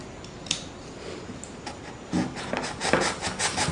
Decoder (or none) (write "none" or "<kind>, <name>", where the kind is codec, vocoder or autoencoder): none